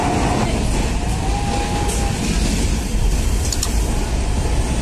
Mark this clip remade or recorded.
recorded